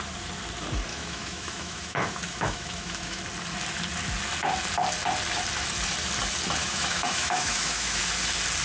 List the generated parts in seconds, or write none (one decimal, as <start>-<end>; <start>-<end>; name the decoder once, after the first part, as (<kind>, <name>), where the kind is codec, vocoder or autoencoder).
0.9-3.2 (autoencoder, DAC-VAE); 6.6-8.0